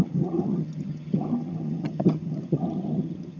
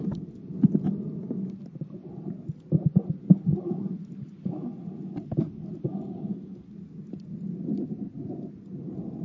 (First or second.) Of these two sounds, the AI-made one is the first